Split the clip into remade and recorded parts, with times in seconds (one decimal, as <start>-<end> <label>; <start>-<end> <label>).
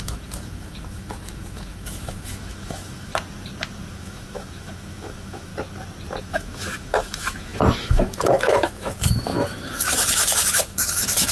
0.0-3.1 remade; 3.1-3.9 recorded; 3.9-5.5 remade; 5.5-6.2 recorded; 6.2-11.3 remade